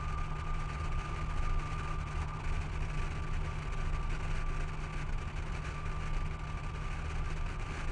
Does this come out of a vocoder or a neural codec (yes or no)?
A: no